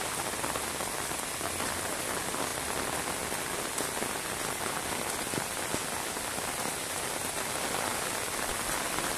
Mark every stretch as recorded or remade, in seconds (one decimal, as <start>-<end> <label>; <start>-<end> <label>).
0.0-7.9 recorded; 7.9-8.5 remade; 8.5-9.2 recorded